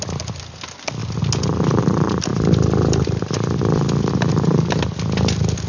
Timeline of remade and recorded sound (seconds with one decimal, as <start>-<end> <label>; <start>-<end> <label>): 0.0-2.3 recorded; 2.3-4.3 remade; 4.3-5.7 recorded